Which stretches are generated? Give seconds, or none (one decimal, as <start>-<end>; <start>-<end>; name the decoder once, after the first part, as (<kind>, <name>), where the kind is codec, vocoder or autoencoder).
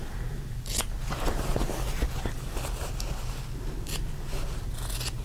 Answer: none